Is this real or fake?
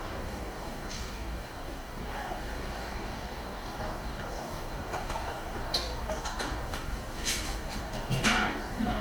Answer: fake